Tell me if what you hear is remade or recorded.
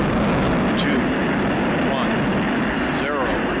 recorded